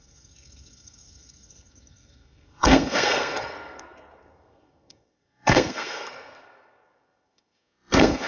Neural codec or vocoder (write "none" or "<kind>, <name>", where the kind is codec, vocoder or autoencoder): codec, SNAC